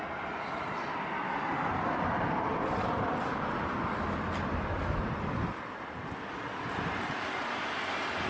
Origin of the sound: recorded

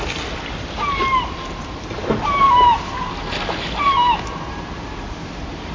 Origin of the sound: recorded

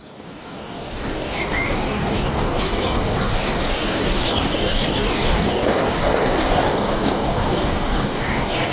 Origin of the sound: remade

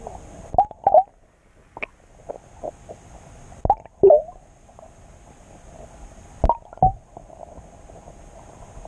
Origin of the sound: recorded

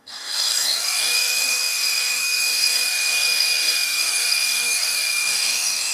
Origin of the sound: remade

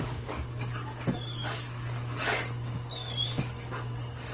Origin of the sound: remade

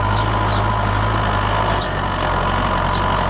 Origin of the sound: recorded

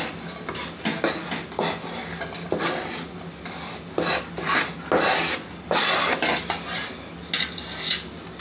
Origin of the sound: recorded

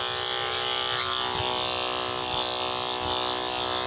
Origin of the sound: recorded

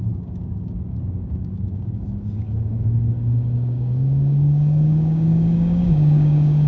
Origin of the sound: remade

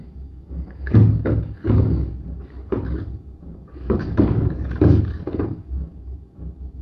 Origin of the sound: remade